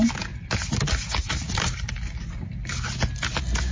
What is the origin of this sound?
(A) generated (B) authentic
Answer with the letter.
B